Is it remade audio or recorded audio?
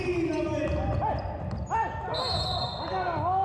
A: recorded